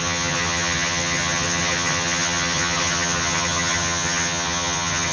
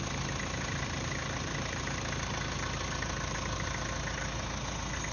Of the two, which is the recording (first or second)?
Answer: second